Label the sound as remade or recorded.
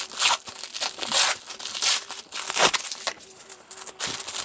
recorded